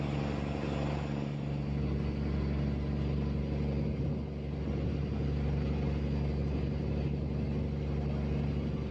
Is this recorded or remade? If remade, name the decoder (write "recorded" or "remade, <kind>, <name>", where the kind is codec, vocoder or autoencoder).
recorded